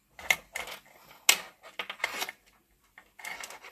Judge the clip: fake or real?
real